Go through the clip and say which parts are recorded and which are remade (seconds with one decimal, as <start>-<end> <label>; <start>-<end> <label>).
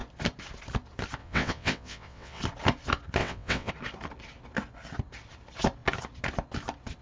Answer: 0.0-1.2 recorded; 1.2-2.4 remade; 2.4-3.2 recorded; 3.2-3.7 remade; 3.7-7.0 recorded